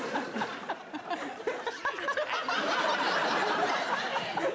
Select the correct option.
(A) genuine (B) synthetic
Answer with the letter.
A